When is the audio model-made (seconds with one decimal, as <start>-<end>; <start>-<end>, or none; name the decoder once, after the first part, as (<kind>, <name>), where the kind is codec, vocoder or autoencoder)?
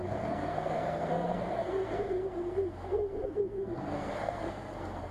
0.0-5.1 (codec, SNAC)